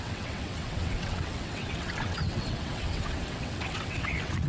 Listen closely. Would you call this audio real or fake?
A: fake